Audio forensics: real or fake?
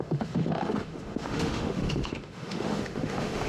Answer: fake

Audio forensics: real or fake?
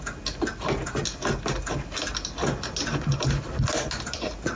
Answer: real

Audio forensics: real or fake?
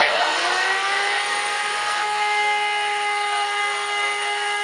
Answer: fake